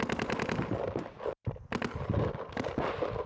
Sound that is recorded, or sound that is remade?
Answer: recorded